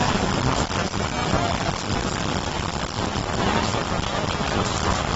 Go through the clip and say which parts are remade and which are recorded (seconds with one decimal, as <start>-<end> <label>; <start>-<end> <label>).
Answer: 0.0-5.2 recorded